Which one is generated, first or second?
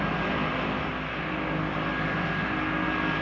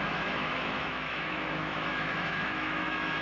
second